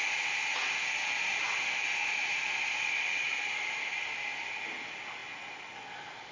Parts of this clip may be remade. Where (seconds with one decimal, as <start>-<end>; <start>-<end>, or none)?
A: none